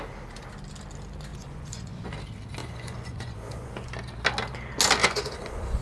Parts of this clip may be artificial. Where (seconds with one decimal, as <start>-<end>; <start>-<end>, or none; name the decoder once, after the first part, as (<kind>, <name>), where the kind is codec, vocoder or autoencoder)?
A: 1.3-2.1 (vocoder, Vocos); 2.6-3.9; 5.0-5.8